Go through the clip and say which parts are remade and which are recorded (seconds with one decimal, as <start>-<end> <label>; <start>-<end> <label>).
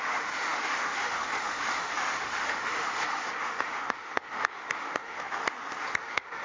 0.0-5.4 remade; 5.4-6.0 recorded; 6.0-6.4 remade